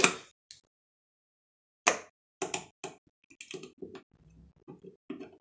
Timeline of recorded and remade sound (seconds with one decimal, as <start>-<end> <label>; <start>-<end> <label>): 0.0-5.4 recorded